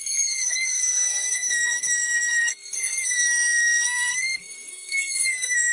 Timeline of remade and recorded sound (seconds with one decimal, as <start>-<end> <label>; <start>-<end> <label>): 0.0-5.7 remade